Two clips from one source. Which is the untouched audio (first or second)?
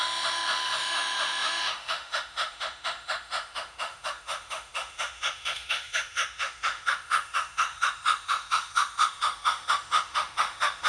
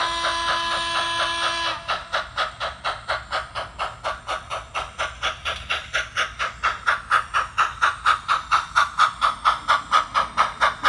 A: second